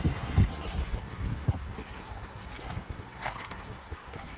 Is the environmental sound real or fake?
fake